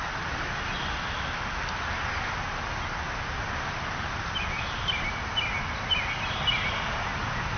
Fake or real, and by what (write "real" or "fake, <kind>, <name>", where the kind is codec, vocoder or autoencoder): real